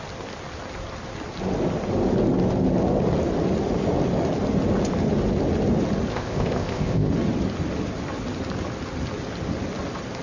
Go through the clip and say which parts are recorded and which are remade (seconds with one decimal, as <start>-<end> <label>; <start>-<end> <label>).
0.0-6.1 recorded; 6.1-7.1 remade; 7.1-10.2 recorded